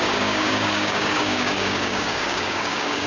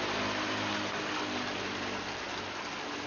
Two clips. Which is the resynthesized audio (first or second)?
first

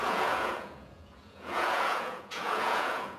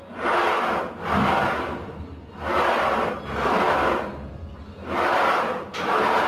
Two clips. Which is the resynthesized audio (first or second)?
first